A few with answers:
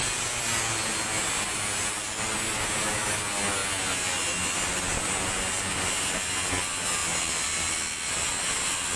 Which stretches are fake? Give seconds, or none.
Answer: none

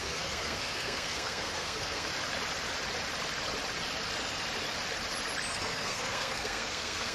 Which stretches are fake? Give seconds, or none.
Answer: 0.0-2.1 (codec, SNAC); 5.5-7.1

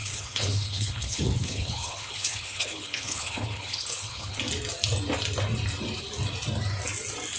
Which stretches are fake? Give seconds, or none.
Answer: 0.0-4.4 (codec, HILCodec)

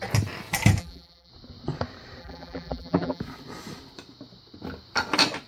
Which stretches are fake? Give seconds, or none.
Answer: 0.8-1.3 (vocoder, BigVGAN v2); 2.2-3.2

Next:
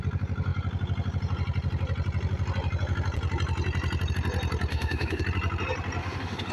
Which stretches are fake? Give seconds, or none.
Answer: 4.7-5.2 (autoencoder, DAC-VAE); 6.0-6.5

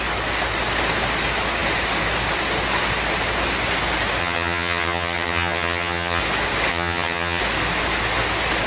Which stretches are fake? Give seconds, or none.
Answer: 4.2-6.2 (vocoder, HiFi-GAN); 6.7-7.4

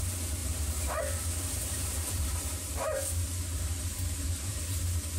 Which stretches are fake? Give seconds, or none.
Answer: 0.4-1.0 (vocoder, BigVGAN v2); 1.6-3.0; 3.9-4.8